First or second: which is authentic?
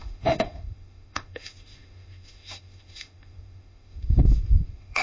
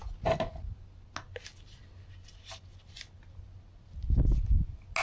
second